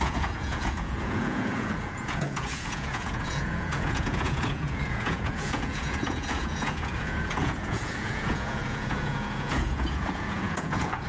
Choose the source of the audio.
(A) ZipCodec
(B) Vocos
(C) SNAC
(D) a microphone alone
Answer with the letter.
B